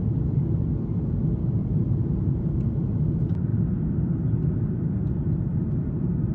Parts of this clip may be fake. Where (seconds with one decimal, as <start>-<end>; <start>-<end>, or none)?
1.6-2.5; 5.5-6.3